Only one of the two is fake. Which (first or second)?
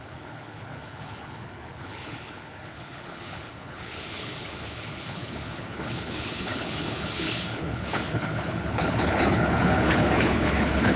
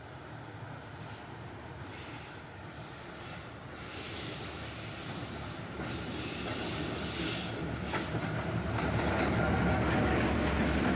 first